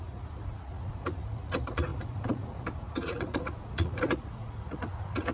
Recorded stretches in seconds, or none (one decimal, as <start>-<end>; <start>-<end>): none